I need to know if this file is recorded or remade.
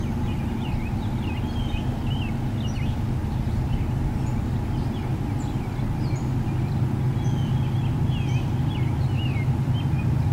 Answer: recorded